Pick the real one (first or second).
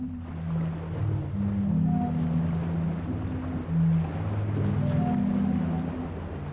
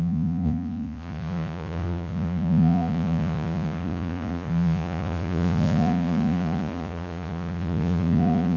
first